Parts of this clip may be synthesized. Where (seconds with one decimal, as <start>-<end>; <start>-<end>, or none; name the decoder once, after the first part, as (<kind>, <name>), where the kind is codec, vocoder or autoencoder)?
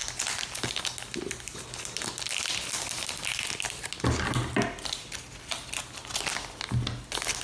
none